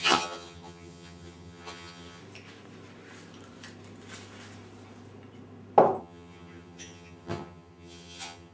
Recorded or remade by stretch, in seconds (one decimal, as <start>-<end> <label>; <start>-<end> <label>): 0.0-2.2 remade; 2.2-6.0 recorded; 6.0-8.5 remade